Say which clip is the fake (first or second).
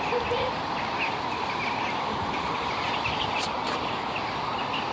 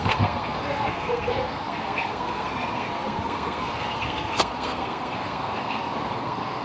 second